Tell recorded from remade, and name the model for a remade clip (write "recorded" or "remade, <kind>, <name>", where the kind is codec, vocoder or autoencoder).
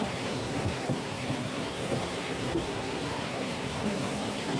remade, codec, SNAC